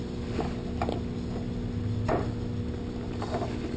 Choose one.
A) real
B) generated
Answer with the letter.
A